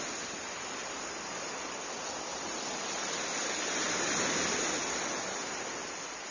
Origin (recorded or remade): recorded